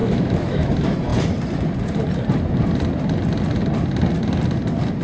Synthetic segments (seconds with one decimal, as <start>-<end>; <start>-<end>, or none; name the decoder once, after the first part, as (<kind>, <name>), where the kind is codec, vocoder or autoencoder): 0.0-0.7 (autoencoder, DAC-VAE)